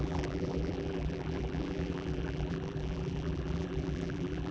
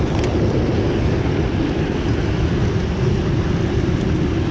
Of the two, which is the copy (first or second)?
first